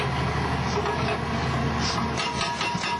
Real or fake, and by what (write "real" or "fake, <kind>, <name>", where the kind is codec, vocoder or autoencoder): real